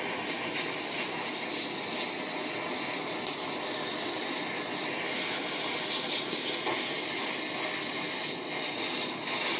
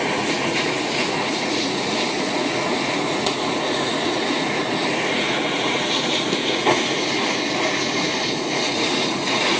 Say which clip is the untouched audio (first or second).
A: first